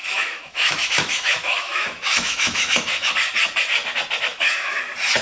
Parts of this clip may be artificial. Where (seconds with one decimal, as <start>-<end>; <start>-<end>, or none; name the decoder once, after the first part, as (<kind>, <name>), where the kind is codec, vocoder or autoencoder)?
0.0-3.1 (autoencoder, DAC-VAE); 4.3-4.8